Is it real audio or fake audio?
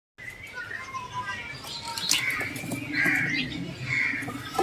real